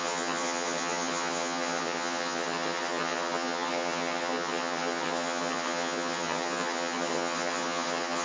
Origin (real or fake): fake